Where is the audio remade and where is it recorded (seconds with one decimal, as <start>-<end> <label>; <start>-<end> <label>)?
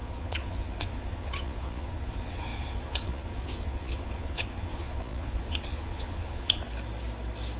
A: 0.0-6.6 remade; 6.6-7.6 recorded